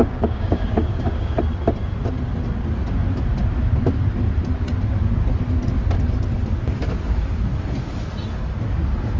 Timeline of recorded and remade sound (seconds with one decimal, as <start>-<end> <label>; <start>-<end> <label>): 0.0-1.4 remade; 1.4-9.2 recorded

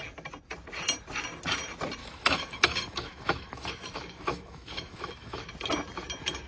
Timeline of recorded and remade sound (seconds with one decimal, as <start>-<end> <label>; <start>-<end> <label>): 0.0-2.0 recorded; 2.0-5.5 remade; 5.5-6.5 recorded

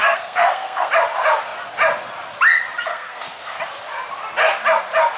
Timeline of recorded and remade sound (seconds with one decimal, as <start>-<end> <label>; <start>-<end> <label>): 0.0-0.9 remade; 0.9-2.9 recorded; 2.9-3.6 remade; 3.6-5.2 recorded

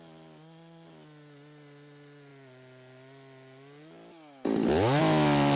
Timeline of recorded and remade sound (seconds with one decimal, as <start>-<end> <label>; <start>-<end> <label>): 0.0-5.6 recorded